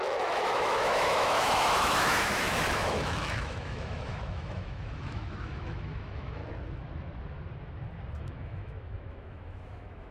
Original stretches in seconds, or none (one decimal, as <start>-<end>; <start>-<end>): 6.4-8.2